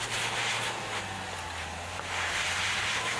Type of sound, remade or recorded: recorded